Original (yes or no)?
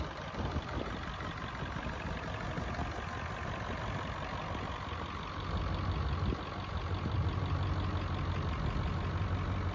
yes